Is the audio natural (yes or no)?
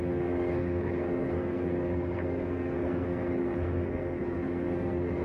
no